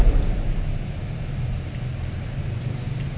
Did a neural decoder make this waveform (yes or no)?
no